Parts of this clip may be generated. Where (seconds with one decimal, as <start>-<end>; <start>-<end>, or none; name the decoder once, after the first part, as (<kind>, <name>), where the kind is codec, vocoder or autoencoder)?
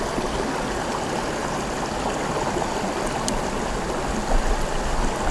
none